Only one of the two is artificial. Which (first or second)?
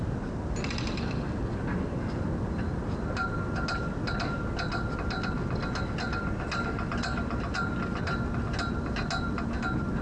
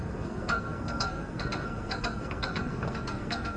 second